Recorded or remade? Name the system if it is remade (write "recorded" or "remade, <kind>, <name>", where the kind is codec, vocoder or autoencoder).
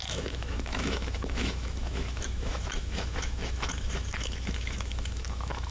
remade, autoencoder, DAC-VAE